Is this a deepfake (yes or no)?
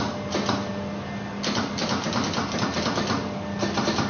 no